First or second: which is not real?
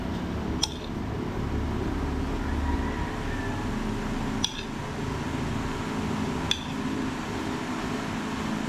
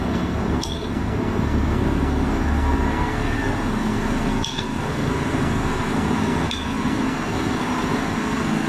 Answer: second